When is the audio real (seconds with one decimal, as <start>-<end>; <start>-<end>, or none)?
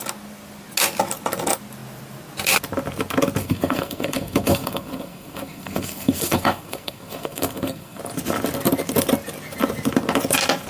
0.0-3.4; 8.0-10.7